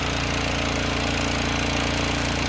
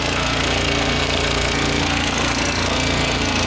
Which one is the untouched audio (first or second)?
first